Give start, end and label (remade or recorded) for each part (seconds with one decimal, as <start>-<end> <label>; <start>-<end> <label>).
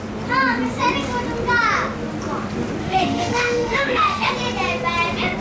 0.0-2.8 recorded; 2.8-4.3 remade; 4.3-5.4 recorded